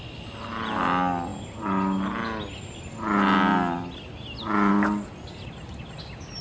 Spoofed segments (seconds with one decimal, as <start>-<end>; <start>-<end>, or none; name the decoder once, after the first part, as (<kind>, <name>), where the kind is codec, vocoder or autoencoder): none